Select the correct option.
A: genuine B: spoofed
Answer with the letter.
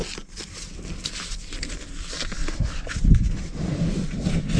A